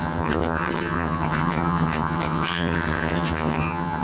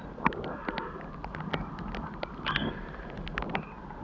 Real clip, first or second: second